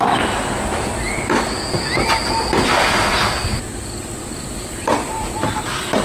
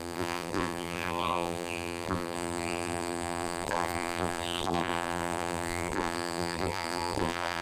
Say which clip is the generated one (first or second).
second